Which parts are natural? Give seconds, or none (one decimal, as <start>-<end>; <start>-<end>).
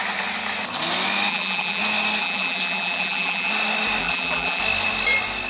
0.0-1.3; 1.8-2.2; 3.5-4.0; 4.6-5.5